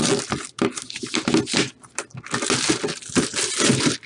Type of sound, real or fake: real